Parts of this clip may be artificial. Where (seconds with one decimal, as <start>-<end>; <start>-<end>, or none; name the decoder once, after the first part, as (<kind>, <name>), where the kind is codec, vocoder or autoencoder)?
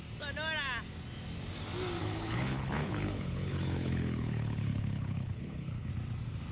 2.0-5.9 (codec, HILCodec)